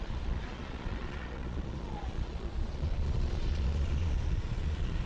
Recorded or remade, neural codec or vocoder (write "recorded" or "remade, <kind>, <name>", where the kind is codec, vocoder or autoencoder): remade, vocoder, Vocos